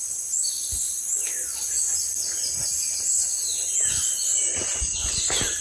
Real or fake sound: real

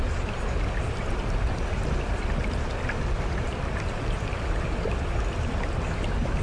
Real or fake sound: real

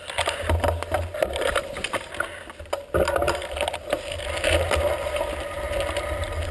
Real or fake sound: real